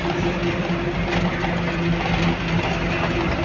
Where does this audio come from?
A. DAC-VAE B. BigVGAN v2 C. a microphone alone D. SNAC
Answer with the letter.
C